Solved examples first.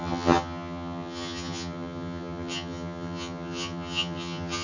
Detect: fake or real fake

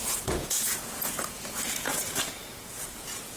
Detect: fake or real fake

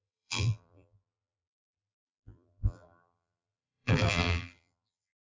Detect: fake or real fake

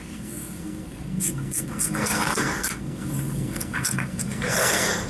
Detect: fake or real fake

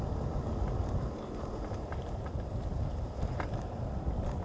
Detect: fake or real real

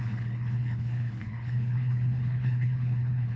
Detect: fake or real fake